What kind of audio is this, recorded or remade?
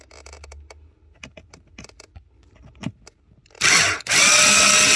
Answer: recorded